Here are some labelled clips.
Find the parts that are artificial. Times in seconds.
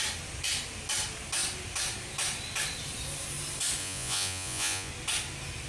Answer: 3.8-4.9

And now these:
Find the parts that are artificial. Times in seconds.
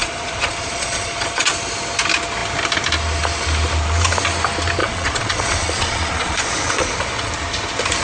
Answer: 0.0-1.5; 4.8-7.3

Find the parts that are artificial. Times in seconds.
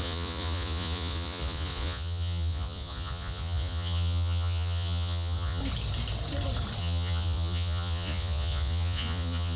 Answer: 0.0-5.6; 6.8-9.6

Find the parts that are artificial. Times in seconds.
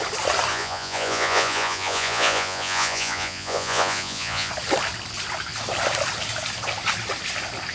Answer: 0.5-4.5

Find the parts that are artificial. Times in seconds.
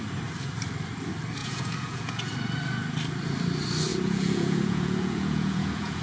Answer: 1.4-2.3; 3.9-6.0